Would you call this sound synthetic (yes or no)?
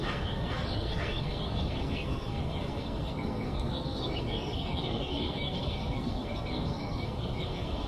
yes